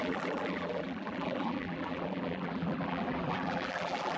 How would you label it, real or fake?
fake